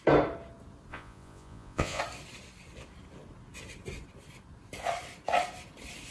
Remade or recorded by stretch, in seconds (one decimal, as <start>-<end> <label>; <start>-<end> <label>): 0.0-0.9 recorded; 0.9-2.0 remade; 2.0-6.1 recorded